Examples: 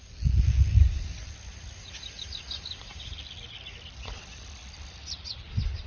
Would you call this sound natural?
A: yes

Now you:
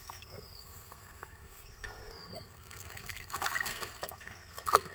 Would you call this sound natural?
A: no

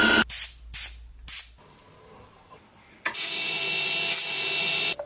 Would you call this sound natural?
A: yes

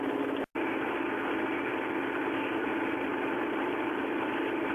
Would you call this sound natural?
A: yes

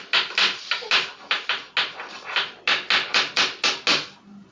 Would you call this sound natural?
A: yes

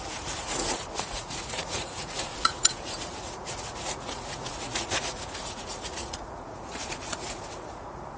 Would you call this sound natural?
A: no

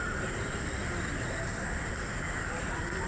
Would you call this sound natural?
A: yes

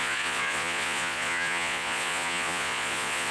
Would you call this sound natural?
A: no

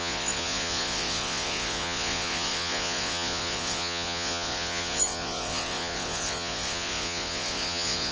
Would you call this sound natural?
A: no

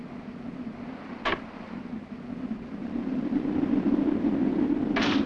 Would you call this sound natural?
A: yes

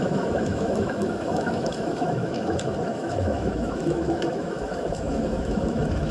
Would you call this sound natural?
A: no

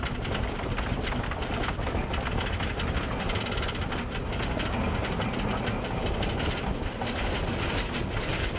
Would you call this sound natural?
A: yes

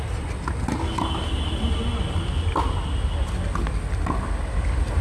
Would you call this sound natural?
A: yes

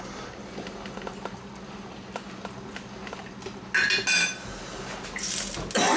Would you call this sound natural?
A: yes